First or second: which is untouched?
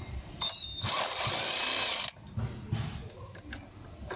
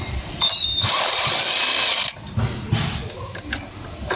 first